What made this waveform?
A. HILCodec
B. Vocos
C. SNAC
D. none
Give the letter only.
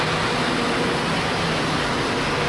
D